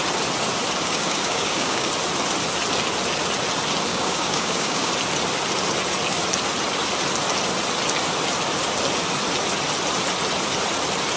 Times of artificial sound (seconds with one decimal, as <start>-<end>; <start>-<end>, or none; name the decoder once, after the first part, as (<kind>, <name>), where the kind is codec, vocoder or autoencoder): 0.8-1.9 (codec, DAC); 3.9-4.9